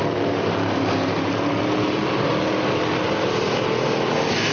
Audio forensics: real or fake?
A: real